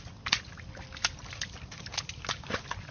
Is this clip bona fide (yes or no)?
yes